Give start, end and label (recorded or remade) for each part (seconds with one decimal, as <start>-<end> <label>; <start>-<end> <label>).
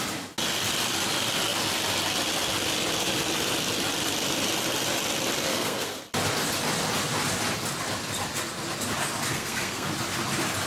0.0-5.5 recorded; 5.5-6.0 remade; 6.0-9.3 recorded; 9.3-9.9 remade; 9.9-10.7 recorded